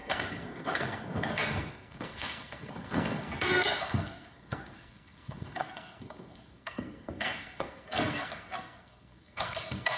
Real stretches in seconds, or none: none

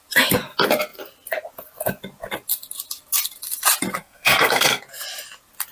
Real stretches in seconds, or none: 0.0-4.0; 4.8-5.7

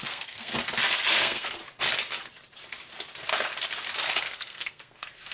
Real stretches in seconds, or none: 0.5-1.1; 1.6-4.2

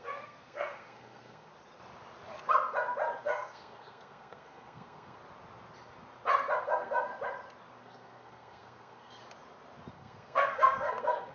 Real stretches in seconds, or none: 1.5-3.2; 5.2-6.6; 7.1-7.8; 9.2-9.9

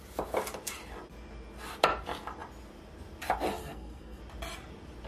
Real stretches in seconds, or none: 0.0-3.6; 4.2-5.1

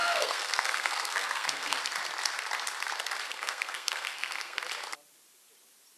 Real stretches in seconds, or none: 1.8-3.3; 4.6-6.0

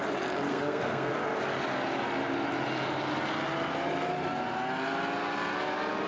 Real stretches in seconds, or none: 0.0-0.5; 1.1-6.1